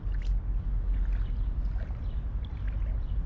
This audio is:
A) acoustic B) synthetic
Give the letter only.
A